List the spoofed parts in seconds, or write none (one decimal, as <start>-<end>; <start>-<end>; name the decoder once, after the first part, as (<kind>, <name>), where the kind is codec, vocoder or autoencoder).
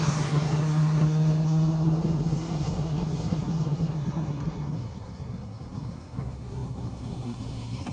0.0-7.9 (codec, SNAC)